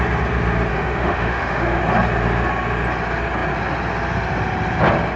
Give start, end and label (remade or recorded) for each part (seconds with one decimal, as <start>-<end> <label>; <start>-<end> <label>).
0.0-0.7 recorded; 0.7-1.8 remade; 1.8-5.2 recorded